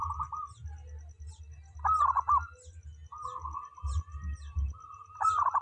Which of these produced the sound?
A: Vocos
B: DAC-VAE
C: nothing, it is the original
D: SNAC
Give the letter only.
C